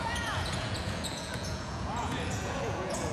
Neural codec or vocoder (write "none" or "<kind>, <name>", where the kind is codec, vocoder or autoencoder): vocoder, Vocos